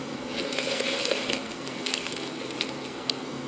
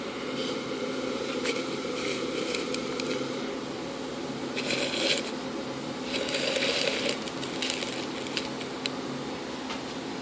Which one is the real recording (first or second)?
second